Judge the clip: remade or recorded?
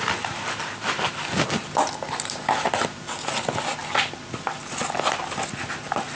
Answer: recorded